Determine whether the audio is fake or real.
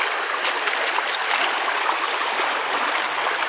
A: real